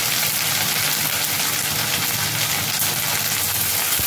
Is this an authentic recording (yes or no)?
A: yes